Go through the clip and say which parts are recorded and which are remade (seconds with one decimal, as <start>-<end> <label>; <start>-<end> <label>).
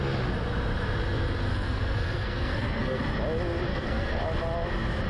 0.0-1.5 recorded; 1.5-3.0 remade; 3.0-3.7 recorded; 3.7-4.2 remade; 4.2-5.1 recorded